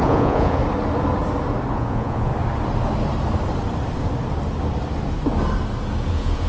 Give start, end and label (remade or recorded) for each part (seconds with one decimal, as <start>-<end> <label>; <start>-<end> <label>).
0.0-0.6 remade; 0.6-1.7 recorded; 1.7-2.3 remade; 2.3-6.1 recorded; 6.1-6.5 remade